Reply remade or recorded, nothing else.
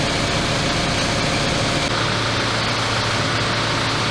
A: recorded